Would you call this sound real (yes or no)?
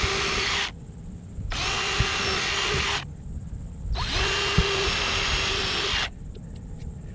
yes